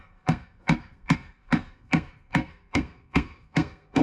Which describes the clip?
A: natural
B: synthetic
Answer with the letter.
B